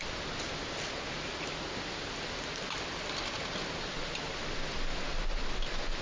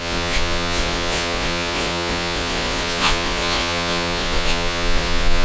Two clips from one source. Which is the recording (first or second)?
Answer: first